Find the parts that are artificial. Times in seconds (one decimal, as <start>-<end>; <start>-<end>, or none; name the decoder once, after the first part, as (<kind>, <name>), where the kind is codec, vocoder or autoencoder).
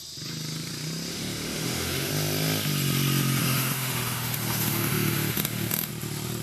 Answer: 1.1-2.1 (autoencoder, DAC-VAE); 3.4-5.9